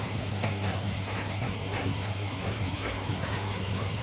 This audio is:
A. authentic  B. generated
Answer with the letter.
B